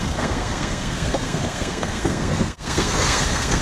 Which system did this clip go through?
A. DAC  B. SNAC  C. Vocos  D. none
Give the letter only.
B